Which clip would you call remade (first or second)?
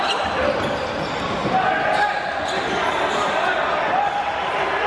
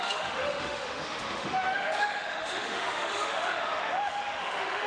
second